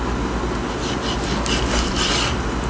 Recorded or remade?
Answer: recorded